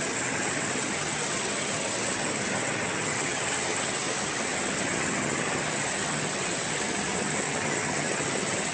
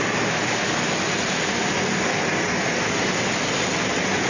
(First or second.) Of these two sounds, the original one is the second